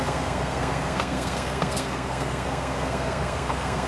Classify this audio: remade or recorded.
remade